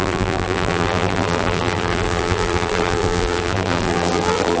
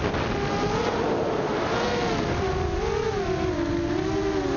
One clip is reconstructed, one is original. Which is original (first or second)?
second